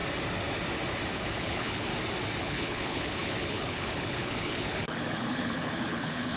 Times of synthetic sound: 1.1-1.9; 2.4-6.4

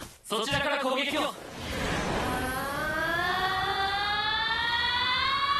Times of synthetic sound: 0.5-1.8; 2.7-5.6

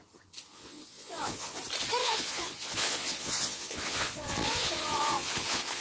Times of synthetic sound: 0.5-1.6; 2.0-5.8